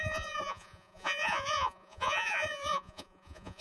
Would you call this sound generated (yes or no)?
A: yes